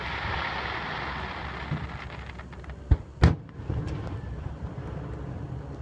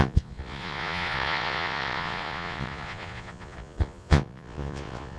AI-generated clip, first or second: second